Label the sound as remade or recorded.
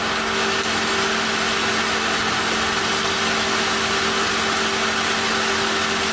recorded